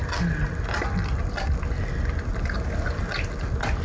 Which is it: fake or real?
real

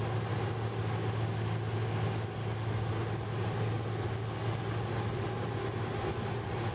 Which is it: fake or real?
real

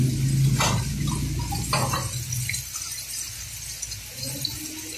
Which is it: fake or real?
real